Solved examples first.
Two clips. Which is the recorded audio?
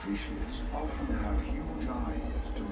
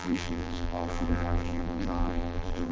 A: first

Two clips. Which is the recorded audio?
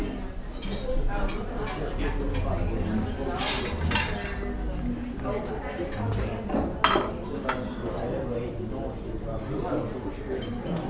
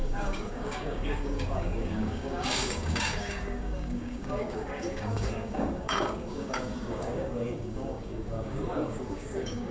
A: first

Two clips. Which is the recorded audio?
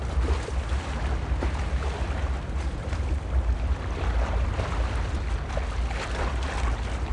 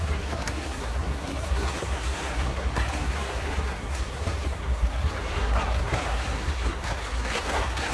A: first